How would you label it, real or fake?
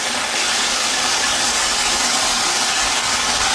fake